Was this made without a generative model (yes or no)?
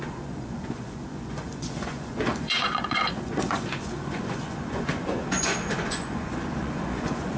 no